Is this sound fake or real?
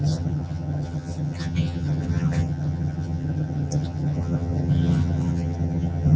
fake